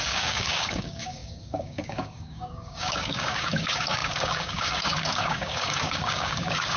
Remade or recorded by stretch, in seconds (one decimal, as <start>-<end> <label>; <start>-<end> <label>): 0.0-6.8 remade